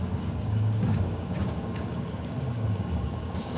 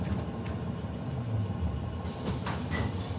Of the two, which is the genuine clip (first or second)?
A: second